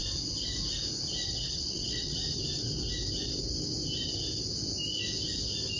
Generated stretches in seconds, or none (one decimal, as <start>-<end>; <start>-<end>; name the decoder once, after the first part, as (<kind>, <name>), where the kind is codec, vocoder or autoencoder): 1.3-2.2 (vocoder, WaveNeXt)